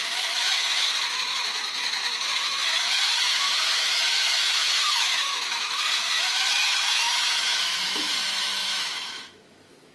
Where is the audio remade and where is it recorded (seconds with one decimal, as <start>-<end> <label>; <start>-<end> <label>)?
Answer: 0.0-9.9 remade